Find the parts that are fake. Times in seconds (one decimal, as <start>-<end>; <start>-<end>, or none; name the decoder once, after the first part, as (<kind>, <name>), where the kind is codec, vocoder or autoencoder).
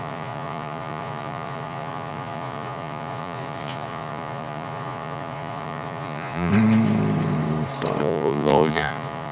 0.0-6.5 (vocoder, Vocos); 8.0-9.3